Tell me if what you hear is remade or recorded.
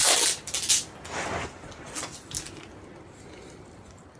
recorded